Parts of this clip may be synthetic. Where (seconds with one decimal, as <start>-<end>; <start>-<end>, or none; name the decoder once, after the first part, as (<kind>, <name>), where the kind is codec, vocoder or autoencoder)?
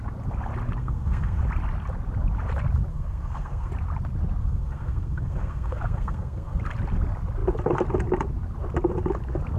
0.8-1.4 (codec, SNAC); 2.9-3.7; 4.4-6.6